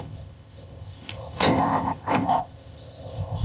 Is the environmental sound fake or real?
fake